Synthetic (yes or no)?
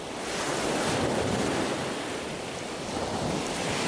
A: no